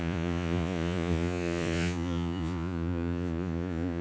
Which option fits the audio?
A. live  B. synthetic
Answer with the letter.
B